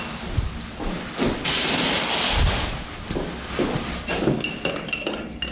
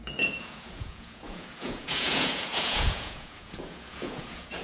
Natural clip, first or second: first